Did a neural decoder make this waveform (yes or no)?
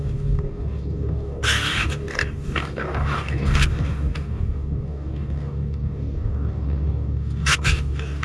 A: yes